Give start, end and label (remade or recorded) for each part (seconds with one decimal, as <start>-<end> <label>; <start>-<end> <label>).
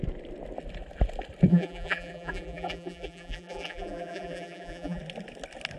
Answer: 0.0-1.5 recorded; 1.5-5.0 remade; 5.0-5.8 recorded